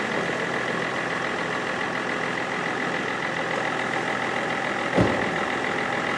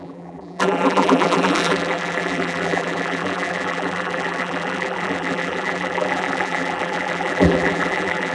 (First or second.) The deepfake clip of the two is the second